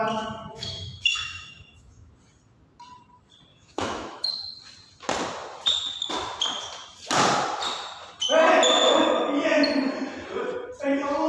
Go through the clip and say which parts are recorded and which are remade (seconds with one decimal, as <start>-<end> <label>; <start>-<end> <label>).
0.0-0.5 recorded; 0.5-2.1 remade; 2.1-3.5 recorded; 3.5-4.3 remade; 4.3-11.3 recorded